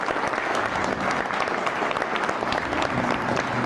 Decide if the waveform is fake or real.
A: real